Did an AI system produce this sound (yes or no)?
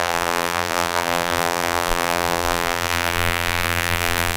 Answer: yes